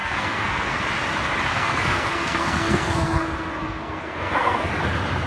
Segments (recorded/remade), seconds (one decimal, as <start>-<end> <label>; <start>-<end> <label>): 0.0-0.8 remade; 0.8-1.5 recorded; 1.5-4.7 remade; 4.7-5.3 recorded